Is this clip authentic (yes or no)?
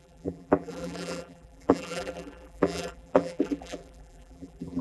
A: no